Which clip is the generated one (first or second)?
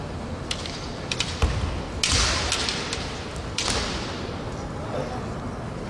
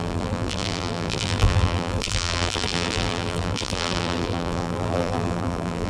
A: second